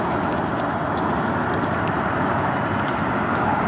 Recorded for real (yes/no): no